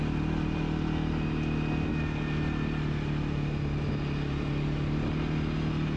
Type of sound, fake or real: real